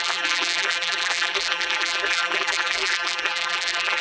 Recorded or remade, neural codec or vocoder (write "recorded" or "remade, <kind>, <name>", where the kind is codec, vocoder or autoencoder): remade, vocoder, BigVGAN v2